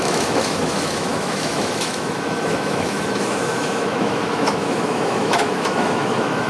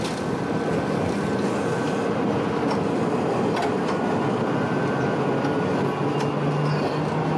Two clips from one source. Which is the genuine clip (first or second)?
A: second